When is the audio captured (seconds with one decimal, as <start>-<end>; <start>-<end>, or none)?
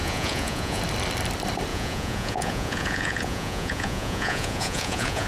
0.8-1.7